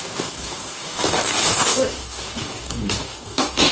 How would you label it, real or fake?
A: fake